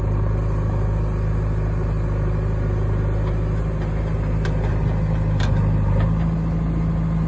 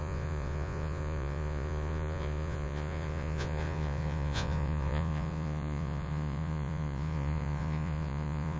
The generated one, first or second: second